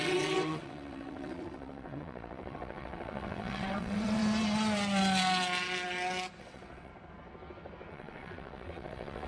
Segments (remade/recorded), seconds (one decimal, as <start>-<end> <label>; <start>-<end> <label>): 0.0-4.2 remade; 4.2-6.4 recorded; 6.4-6.9 remade; 6.9-7.9 recorded; 7.9-9.3 remade